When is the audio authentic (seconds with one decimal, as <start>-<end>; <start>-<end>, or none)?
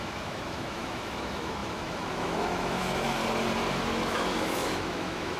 3.2-3.7